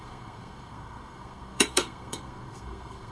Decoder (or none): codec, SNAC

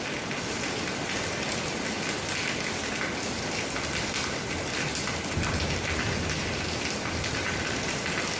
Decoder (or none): none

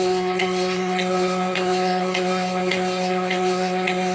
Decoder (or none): codec, SNAC